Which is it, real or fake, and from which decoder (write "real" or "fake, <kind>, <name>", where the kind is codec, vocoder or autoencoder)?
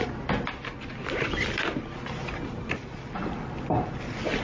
real